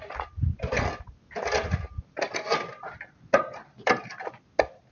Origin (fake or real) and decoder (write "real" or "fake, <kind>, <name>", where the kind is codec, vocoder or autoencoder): real